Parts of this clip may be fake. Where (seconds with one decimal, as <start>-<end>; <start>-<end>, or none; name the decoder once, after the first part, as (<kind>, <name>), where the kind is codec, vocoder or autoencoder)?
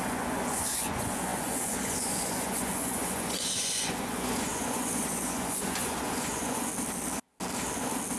0.0-6.7 (vocoder, Vocos)